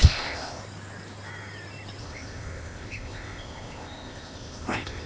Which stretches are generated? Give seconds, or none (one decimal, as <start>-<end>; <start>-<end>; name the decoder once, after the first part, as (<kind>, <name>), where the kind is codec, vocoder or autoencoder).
0.0-0.6 (codec, ZipCodec); 2.0-5.1